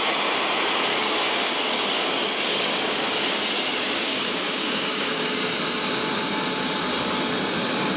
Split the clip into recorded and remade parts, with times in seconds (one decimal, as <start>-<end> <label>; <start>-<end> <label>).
0.0-0.9 recorded; 0.9-5.6 remade; 5.6-8.0 recorded